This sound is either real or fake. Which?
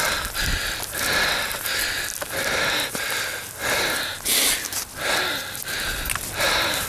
real